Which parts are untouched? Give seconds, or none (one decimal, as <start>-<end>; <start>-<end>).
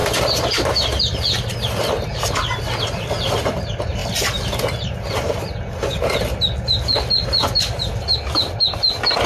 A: 0.0-4.0; 5.4-9.3